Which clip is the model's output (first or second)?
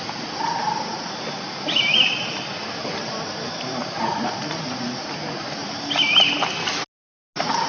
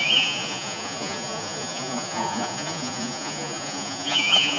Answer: second